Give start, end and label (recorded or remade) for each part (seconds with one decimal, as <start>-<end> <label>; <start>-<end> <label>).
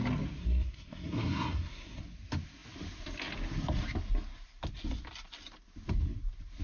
0.0-0.4 recorded; 0.4-2.0 remade; 2.0-6.6 recorded